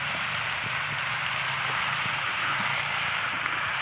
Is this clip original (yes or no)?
no